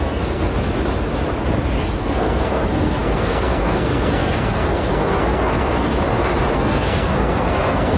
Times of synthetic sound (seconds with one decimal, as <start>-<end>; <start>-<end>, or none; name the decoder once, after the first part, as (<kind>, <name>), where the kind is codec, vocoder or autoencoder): 0.0-0.5 (codec, SNAC); 2.0-5.9; 6.5-8.0